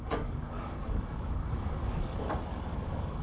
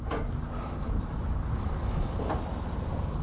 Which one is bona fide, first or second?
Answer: second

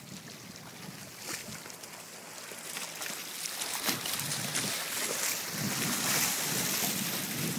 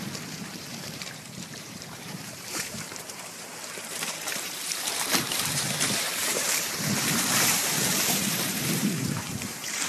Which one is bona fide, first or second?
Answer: first